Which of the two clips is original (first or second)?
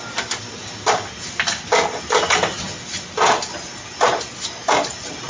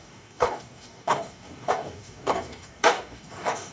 first